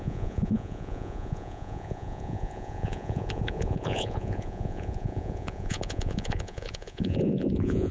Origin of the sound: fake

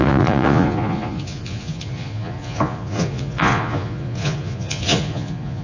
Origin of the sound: fake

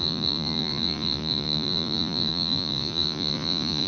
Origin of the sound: fake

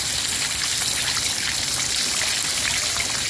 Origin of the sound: real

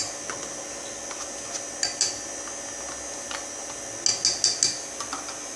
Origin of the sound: real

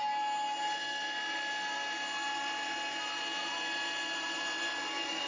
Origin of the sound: real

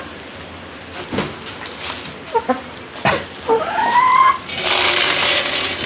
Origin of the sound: real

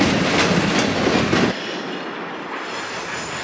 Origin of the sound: real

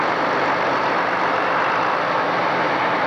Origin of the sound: real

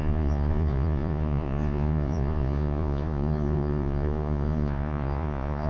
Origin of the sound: fake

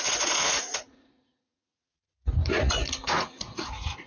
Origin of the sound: fake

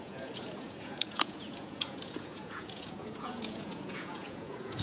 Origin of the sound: fake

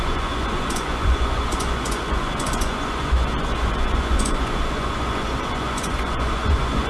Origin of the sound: fake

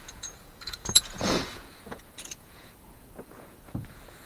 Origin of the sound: fake